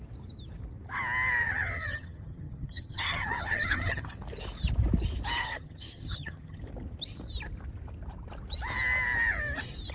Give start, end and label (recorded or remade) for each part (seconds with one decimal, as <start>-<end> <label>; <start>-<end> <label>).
0.0-1.4 recorded; 1.4-4.2 remade; 4.2-5.4 recorded; 5.4-6.6 remade; 6.6-9.9 recorded